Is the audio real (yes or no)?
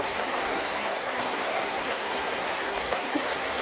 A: no